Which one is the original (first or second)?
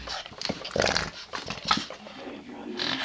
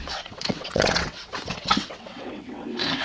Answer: first